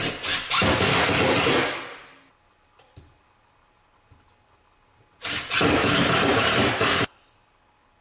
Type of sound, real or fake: real